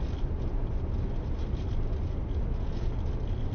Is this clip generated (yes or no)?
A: no